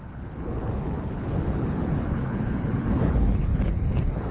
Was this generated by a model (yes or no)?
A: yes